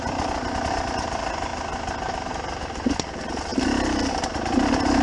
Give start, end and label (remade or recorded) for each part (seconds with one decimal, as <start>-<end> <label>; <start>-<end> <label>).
0.0-5.0 recorded